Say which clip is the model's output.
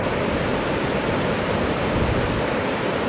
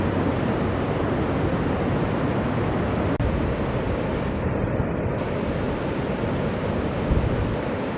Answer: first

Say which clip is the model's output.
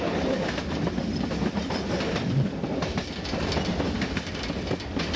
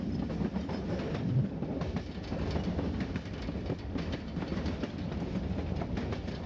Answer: second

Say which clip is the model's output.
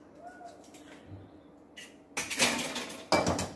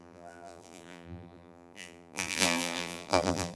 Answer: second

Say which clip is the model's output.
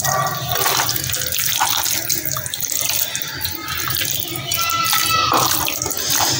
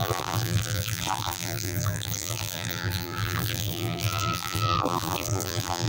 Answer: second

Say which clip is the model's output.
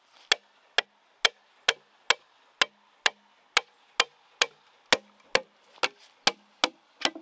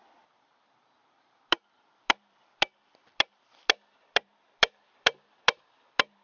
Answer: second